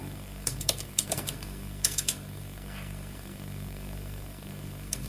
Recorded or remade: remade